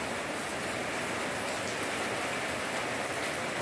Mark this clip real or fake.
real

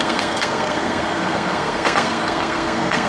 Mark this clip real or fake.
fake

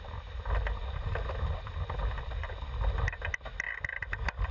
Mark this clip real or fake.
real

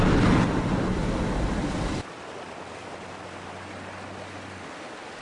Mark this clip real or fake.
real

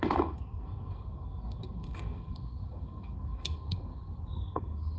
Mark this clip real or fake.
fake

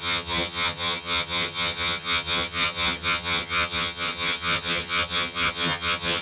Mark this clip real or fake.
fake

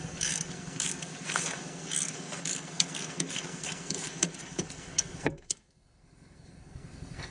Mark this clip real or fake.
fake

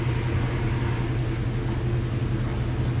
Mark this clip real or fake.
real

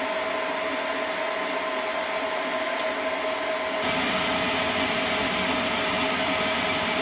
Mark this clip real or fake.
real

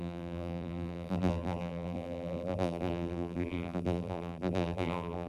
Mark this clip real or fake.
fake